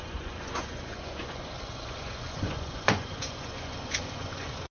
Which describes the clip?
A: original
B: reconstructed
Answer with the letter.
B